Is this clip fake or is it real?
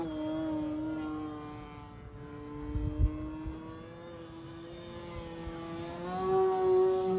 real